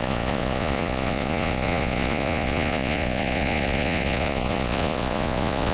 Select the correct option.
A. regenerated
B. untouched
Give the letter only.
A